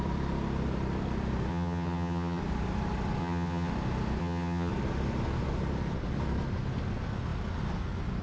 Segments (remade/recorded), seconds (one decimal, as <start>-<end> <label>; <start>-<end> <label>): 0.0-1.5 recorded; 1.5-2.4 remade; 2.4-3.2 recorded; 3.2-3.7 remade; 3.7-4.2 recorded; 4.2-4.7 remade; 4.7-8.2 recorded